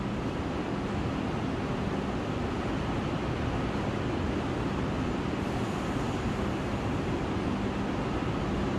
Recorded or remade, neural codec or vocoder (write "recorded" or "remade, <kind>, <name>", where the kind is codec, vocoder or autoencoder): recorded